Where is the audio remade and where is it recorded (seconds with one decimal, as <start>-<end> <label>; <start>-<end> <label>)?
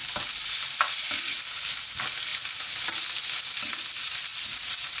0.0-4.3 recorded; 4.3-5.0 remade